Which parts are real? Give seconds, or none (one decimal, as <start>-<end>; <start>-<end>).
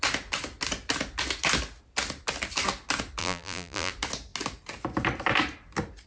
0.0-3.2; 3.9-6.1